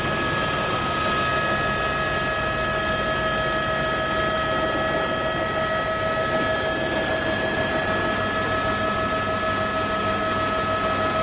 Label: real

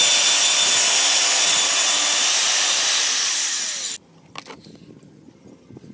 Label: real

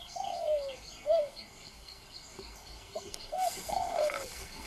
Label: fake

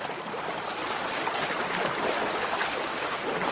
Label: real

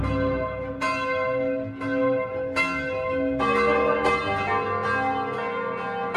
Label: real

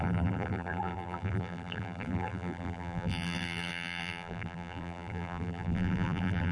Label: fake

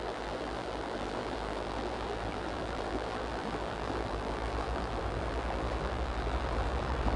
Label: fake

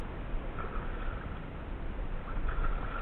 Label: real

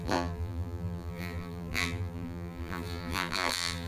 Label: fake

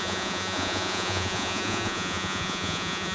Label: fake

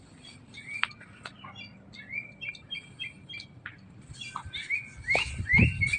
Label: real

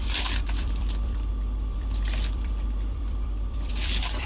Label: fake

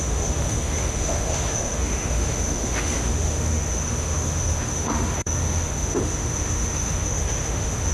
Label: fake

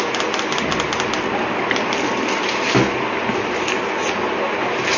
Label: real